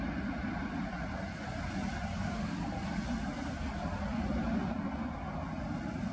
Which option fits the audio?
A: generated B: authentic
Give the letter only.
B